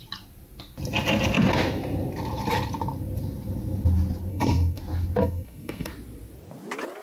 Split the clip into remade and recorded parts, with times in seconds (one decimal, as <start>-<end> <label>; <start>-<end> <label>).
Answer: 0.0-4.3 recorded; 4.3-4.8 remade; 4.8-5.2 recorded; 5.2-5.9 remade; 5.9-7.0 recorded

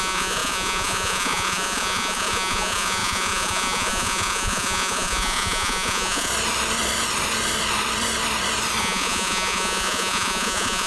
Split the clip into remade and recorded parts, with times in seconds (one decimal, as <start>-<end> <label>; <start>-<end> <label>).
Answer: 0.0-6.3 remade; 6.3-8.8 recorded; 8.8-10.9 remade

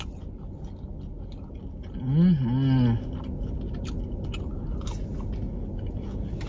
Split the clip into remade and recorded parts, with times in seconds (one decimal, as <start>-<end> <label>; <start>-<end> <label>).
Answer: 0.0-6.5 recorded

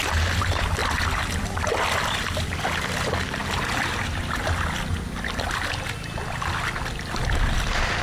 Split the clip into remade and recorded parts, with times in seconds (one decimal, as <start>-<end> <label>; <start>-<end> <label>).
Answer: 0.0-8.0 recorded

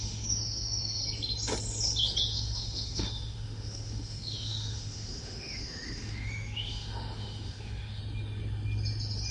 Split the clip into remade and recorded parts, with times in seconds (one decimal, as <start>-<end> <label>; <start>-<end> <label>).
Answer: 0.0-1.0 remade; 1.0-2.3 recorded; 2.3-8.0 remade; 8.0-9.3 recorded

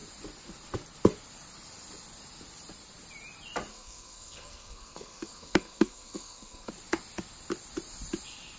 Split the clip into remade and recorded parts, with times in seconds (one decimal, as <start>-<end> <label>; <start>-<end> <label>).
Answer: 0.0-3.7 recorded; 3.7-6.7 remade; 6.7-8.6 recorded